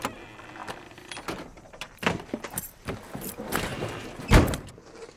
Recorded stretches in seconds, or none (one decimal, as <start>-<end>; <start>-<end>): 0.0-0.6; 3.3-3.7; 4.7-5.2